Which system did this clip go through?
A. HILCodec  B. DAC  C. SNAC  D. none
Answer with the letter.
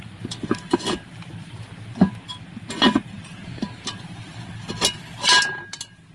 D